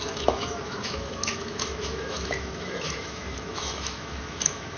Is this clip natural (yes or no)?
no